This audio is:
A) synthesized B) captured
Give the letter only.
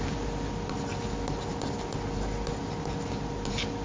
B